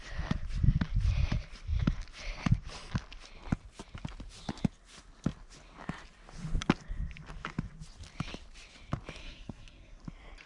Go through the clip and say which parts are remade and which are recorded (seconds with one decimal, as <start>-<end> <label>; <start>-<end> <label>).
0.0-9.2 recorded; 9.2-10.0 remade; 10.0-10.5 recorded